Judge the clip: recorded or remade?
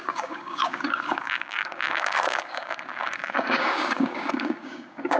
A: remade